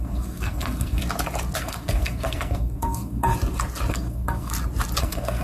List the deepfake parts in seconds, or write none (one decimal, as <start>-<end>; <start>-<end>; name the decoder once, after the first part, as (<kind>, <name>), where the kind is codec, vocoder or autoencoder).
0.0-1.0 (codec, SNAC); 1.6-3.3; 3.9-4.5; 5.0-5.4